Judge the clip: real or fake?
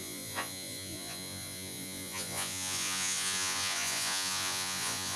fake